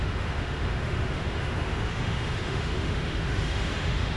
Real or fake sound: fake